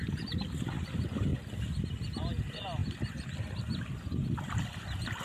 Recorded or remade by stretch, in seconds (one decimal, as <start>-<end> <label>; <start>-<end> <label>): 0.0-5.2 recorded